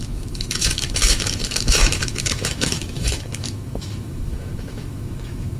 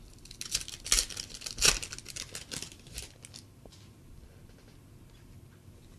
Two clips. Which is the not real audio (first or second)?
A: first